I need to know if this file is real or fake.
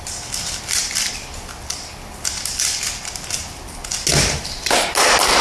real